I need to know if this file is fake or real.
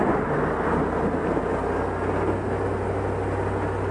real